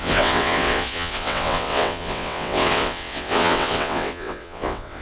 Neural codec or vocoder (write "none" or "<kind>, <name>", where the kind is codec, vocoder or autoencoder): vocoder, WaveNeXt